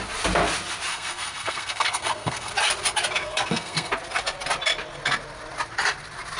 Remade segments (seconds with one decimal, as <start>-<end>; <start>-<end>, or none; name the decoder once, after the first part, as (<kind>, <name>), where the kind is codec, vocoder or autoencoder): 0.9-2.5 (codec, SNAC); 3.2-3.9

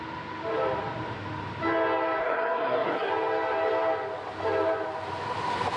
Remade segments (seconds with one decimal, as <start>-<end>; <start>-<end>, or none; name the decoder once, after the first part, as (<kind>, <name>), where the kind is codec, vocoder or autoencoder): 2.2-3.1 (codec, SNAC)

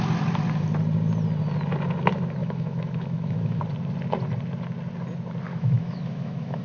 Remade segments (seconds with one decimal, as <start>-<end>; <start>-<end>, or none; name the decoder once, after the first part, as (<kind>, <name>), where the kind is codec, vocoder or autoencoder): 2.4-3.6 (autoencoder, DAC-VAE); 5.5-6.6